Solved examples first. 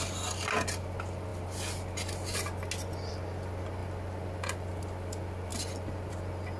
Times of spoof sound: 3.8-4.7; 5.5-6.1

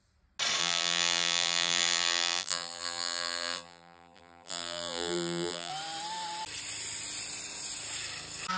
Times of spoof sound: 0.6-5.7

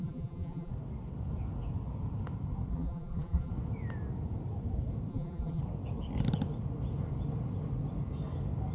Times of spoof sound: 0.0-0.7; 2.7-3.5; 5.1-5.6

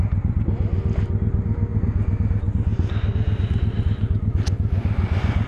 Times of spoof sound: none

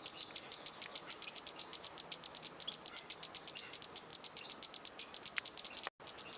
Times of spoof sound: none

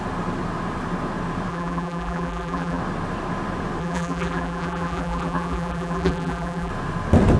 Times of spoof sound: 1.5-2.8; 3.8-6.7

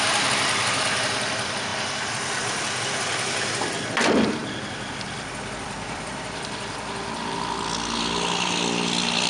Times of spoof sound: 0.0-9.3

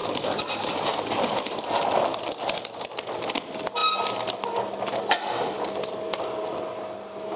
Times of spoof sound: 0.0-1.7